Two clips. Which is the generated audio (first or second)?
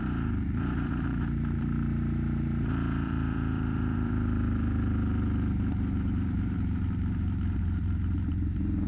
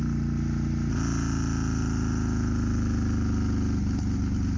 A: first